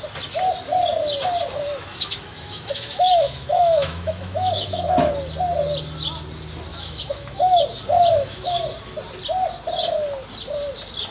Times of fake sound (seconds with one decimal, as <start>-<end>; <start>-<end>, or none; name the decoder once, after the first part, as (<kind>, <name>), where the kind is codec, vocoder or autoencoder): 1.9-5.1 (autoencoder, DAC-VAE); 6.7-7.6; 8.1-8.6